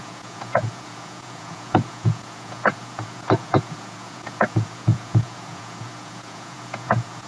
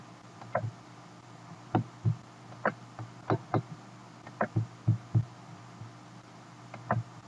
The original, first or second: second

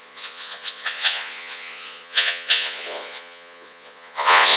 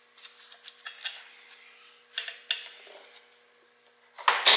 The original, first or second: second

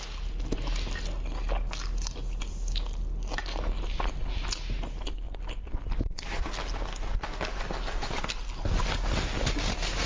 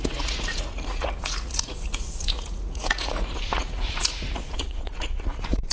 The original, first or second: first